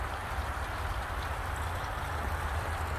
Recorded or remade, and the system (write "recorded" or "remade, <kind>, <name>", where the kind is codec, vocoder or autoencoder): recorded